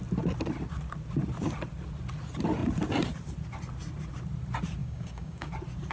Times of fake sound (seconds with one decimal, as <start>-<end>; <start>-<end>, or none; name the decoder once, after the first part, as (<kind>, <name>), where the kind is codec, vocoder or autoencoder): 4.8-5.5 (codec, DAC)